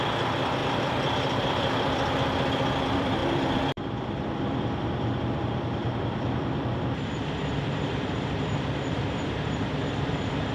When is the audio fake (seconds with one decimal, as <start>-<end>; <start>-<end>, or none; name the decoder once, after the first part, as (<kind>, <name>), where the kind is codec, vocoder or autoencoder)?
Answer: 0.0-10.5 (vocoder, BigVGAN v2)